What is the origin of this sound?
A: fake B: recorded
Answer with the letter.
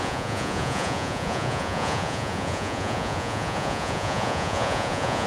A